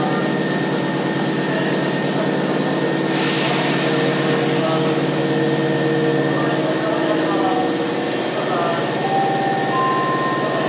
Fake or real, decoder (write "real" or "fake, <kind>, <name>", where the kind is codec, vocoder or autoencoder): real